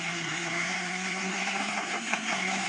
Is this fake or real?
fake